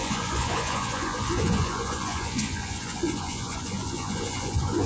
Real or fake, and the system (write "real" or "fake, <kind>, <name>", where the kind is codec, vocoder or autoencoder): fake, vocoder, Vocos